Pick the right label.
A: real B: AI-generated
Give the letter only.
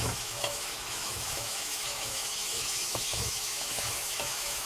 B